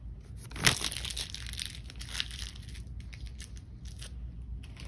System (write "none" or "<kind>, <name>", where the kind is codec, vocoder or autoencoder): none